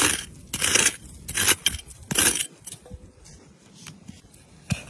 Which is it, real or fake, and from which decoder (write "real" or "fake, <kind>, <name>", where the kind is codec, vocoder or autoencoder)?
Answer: real